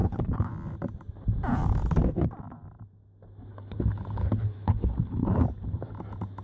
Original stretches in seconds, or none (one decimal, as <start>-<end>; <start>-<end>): 0.5-3.5; 5.4-6.4